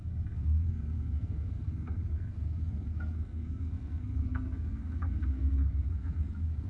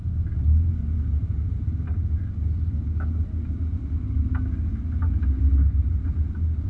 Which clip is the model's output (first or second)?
first